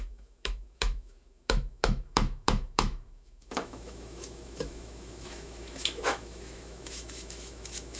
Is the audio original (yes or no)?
no